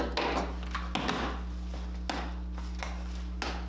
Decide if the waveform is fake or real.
real